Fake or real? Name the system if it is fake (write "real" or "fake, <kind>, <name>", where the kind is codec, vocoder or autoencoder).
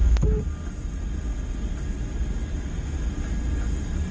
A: real